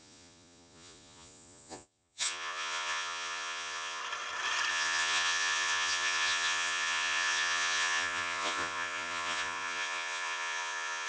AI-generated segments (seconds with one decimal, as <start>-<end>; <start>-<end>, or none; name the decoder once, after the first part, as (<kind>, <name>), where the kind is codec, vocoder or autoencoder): 0.0-4.0 (vocoder, Vocos); 4.7-11.1